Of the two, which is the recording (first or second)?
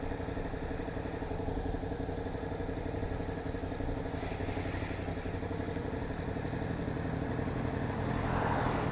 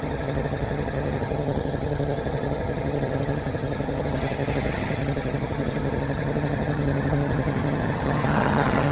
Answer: first